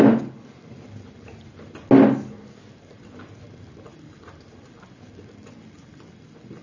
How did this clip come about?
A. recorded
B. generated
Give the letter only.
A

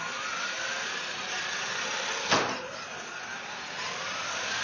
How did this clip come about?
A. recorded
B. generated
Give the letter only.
A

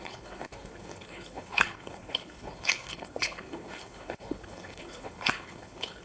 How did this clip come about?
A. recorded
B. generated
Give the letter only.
B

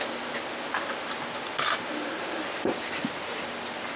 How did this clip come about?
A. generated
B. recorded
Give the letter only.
B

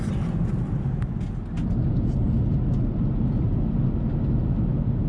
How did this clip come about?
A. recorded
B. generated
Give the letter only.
A